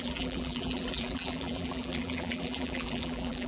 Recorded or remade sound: remade